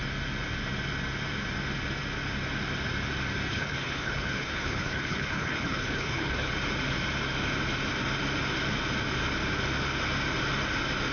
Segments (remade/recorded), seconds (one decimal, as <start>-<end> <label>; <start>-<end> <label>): 0.0-3.5 recorded; 3.5-6.5 remade; 6.5-11.1 recorded

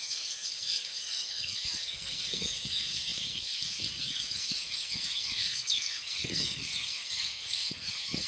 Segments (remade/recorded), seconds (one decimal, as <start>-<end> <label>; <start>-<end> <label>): 0.0-8.3 remade